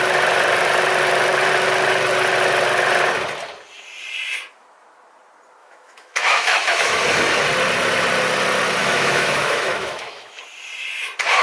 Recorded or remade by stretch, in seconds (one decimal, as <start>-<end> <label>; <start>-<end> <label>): 0.0-5.6 recorded; 5.6-7.0 remade; 7.0-8.8 recorded; 8.8-10.4 remade; 10.4-11.4 recorded